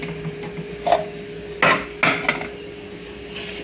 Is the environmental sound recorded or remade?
recorded